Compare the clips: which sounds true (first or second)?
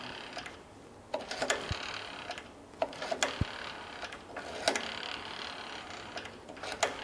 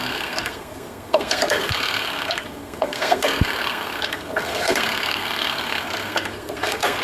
first